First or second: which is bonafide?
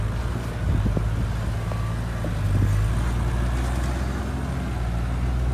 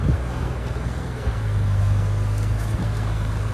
first